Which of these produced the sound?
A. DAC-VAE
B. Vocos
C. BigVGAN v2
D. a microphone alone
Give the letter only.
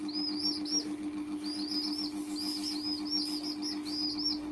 D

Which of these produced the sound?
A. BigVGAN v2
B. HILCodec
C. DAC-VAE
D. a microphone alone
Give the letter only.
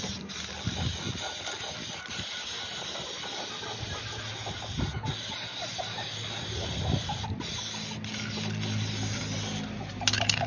D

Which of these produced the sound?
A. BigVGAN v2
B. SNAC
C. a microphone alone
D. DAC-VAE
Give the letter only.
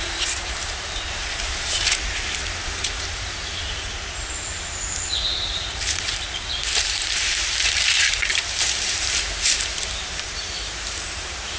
A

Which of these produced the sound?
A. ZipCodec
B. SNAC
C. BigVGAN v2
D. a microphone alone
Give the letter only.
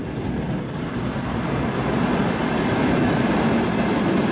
D